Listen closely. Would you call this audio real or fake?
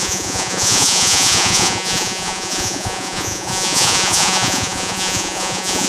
fake